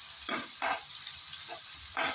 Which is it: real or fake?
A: real